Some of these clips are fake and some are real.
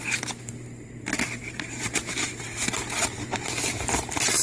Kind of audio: fake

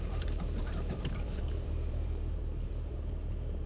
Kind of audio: fake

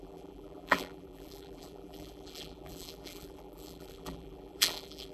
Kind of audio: fake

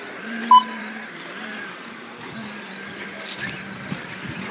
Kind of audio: fake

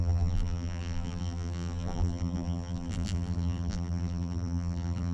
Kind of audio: fake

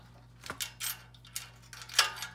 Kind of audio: real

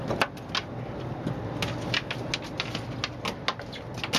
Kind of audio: real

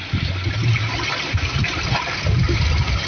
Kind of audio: fake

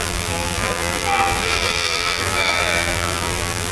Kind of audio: fake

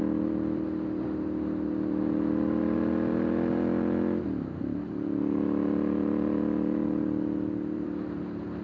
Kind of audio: fake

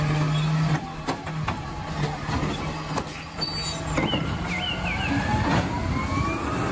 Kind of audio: real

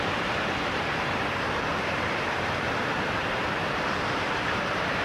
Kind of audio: fake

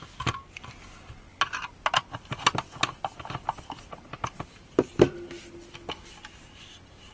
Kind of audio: real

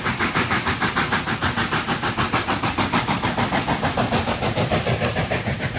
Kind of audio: fake